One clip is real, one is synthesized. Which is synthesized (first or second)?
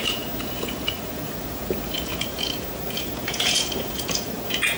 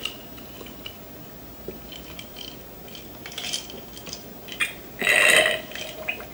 first